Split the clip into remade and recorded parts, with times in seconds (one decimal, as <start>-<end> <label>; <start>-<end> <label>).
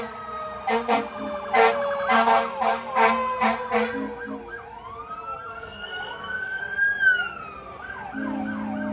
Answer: 0.0-5.5 recorded; 5.5-6.6 remade; 6.6-8.9 recorded